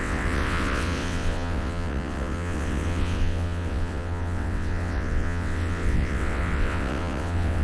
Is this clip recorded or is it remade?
remade